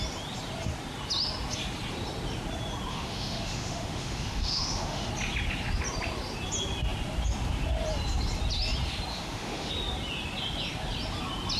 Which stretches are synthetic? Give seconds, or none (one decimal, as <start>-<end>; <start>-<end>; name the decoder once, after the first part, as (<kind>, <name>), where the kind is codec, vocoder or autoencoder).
2.9-5.1 (autoencoder, DAC-VAE); 9.1-9.7